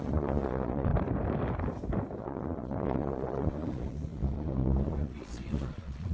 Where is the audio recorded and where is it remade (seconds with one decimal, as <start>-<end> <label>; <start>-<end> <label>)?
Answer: 0.0-0.9 remade; 0.9-2.2 recorded; 2.2-6.1 remade